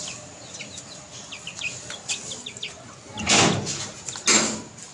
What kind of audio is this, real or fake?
real